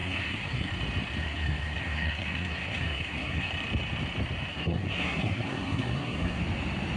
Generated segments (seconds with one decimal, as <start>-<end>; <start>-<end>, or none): 0.0-0.7; 1.2-3.5; 4.5-6.4